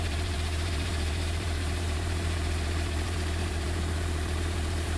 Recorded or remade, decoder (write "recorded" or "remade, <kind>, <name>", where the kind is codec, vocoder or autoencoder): remade, vocoder, BigVGAN v2